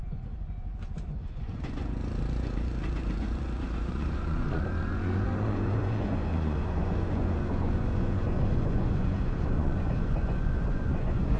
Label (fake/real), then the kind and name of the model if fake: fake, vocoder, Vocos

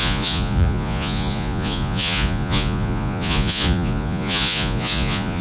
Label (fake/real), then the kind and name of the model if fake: fake, vocoder, Vocos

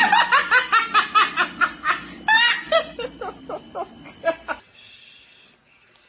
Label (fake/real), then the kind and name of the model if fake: real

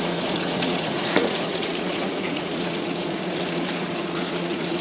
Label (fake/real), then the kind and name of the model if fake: fake, vocoder, Vocos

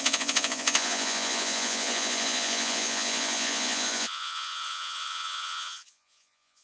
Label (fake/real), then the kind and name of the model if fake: fake, vocoder, Vocos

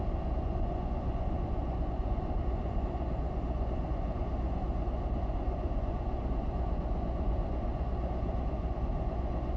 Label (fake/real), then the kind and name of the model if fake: fake, vocoder, Vocos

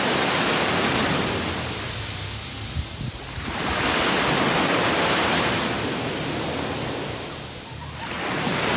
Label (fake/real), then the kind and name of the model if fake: real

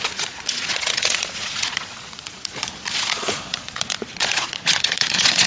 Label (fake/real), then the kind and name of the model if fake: fake, vocoder, Vocos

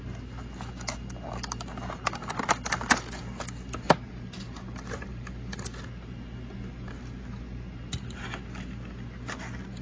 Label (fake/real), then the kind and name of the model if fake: real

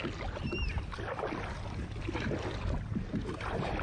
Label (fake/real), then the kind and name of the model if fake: real